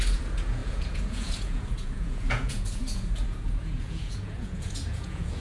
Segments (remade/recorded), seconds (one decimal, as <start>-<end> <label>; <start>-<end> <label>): 0.0-5.4 remade